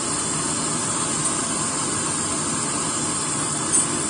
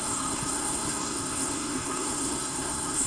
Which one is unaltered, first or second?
first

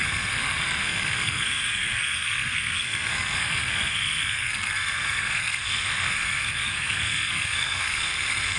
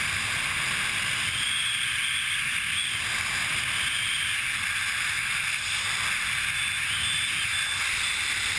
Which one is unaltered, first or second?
second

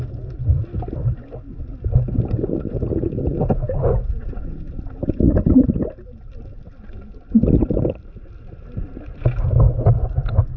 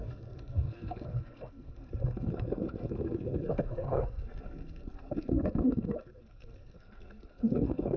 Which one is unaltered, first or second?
first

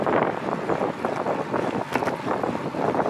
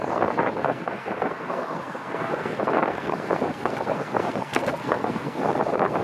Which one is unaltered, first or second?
first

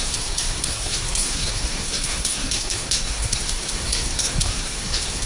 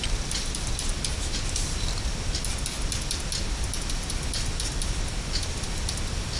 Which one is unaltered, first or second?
second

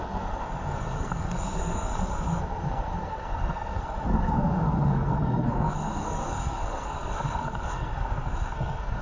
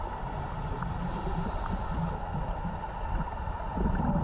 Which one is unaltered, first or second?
second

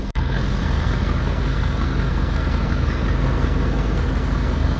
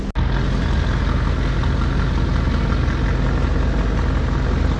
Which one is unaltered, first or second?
second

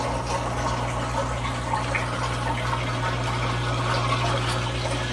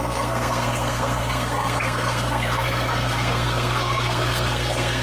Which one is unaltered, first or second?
first